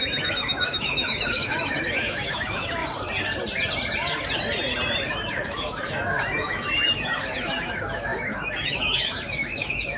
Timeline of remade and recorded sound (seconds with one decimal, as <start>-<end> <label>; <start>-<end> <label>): 0.0-2.8 remade; 2.8-5.1 recorded; 5.1-10.0 remade